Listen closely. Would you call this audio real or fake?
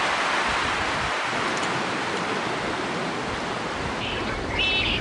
real